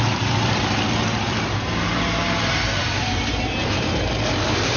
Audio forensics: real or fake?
fake